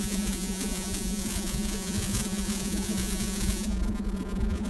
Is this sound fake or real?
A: fake